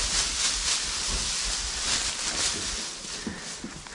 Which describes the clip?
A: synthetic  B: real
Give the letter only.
B